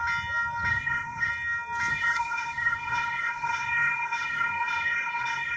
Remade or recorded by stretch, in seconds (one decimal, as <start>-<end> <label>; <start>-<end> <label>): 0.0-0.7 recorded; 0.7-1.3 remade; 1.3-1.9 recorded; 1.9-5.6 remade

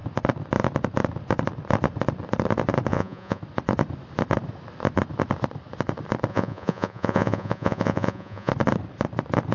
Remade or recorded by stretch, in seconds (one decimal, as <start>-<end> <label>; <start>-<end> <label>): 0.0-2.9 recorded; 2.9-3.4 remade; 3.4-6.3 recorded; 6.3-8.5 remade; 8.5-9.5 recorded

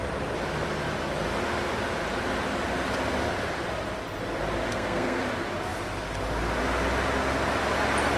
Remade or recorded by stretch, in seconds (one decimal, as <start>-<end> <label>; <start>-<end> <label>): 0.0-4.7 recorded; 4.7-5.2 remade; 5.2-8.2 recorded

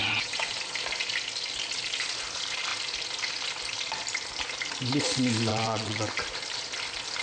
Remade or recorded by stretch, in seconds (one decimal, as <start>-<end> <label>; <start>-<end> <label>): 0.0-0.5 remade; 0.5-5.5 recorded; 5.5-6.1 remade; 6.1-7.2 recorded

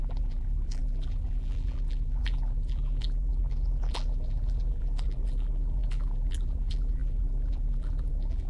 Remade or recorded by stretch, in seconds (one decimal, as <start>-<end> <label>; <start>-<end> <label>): 0.0-8.5 remade